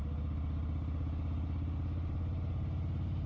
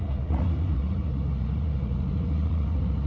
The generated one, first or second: second